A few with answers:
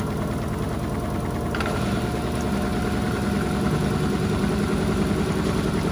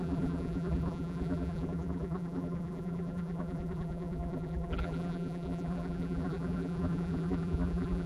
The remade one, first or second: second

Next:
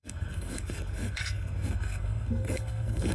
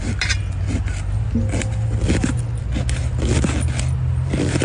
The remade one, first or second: first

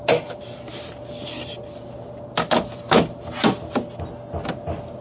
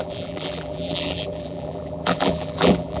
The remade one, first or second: second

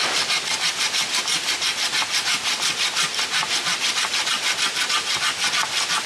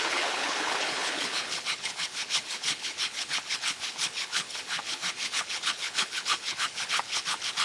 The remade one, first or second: second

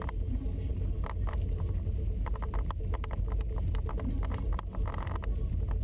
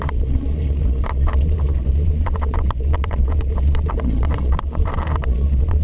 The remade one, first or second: second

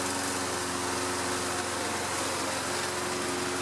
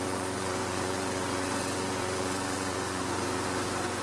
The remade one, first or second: second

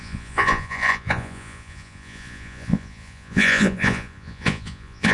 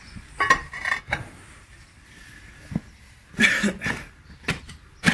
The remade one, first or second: first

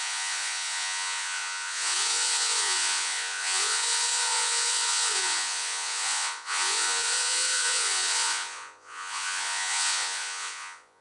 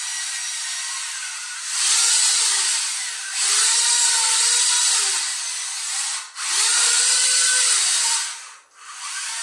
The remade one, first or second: first